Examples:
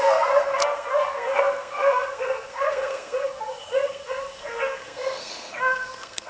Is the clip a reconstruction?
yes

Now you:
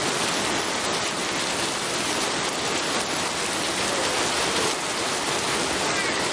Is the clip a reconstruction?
no